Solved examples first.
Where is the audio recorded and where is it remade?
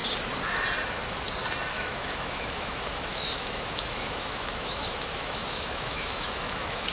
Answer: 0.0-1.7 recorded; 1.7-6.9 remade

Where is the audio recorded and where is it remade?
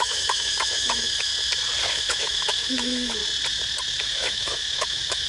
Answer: 0.0-1.3 remade; 1.3-1.9 recorded; 1.9-3.2 remade; 3.2-4.0 recorded; 4.0-5.3 remade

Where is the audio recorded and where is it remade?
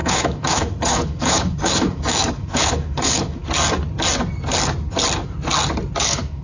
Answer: 0.0-3.4 remade; 3.4-6.0 recorded; 6.0-6.4 remade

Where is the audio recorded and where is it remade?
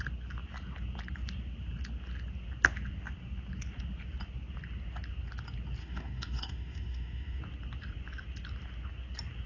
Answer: 0.0-5.8 recorded; 5.8-7.4 remade; 7.4-9.5 recorded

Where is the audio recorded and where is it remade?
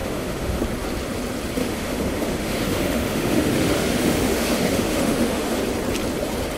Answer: 0.0-0.6 remade; 0.6-1.6 recorded; 1.6-5.6 remade; 5.6-6.6 recorded